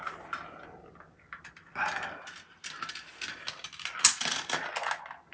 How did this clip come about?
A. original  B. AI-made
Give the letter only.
A